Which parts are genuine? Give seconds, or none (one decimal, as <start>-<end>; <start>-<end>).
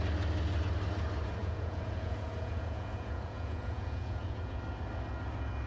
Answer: 0.0-1.4; 4.6-5.7